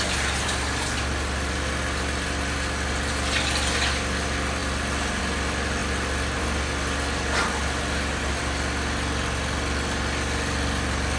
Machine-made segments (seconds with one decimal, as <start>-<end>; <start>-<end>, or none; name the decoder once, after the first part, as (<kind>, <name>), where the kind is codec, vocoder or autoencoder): none